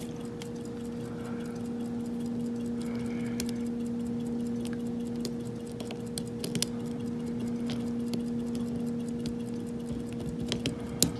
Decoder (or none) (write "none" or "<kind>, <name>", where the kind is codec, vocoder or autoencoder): none